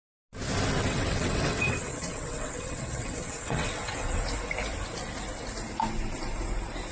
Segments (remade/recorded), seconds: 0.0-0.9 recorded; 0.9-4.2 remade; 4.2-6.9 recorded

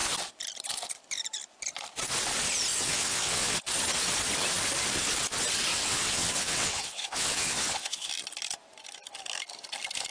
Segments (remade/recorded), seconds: 0.0-2.7 recorded; 2.7-3.5 remade; 3.5-5.7 recorded; 5.7-8.1 remade; 8.1-10.1 recorded

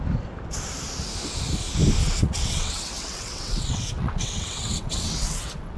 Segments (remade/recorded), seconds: 0.0-2.0 recorded; 2.0-5.8 remade

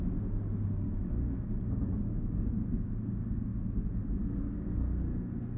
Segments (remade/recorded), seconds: 0.0-5.6 recorded

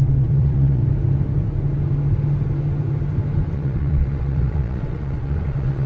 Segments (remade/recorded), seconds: 0.0-0.8 remade; 0.8-3.5 recorded; 3.5-5.9 remade

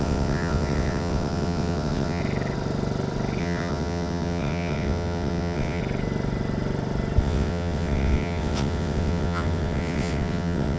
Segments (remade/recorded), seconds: 0.0-2.2 remade; 2.2-3.4 recorded; 3.4-5.8 remade; 5.8-7.2 recorded; 7.2-10.8 remade